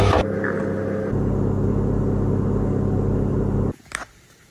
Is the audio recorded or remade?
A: recorded